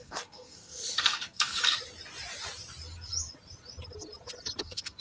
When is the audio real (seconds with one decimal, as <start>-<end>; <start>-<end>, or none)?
1.6-4.6